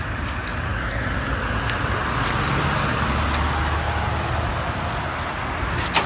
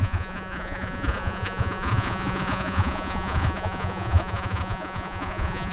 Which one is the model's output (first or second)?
second